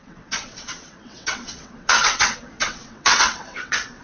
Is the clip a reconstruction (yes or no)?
yes